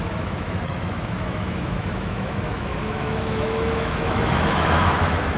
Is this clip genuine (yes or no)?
no